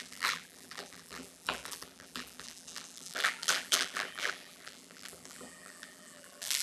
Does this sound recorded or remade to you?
remade